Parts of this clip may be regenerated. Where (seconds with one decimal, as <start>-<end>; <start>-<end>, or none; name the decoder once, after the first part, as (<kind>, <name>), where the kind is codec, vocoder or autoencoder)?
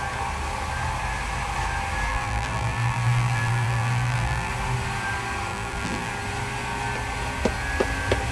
2.1-4.5 (vocoder, BigVGAN v2); 5.5-6.1